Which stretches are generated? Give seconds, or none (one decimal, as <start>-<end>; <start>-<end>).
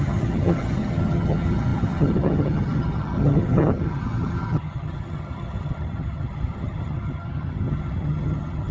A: 0.0-8.7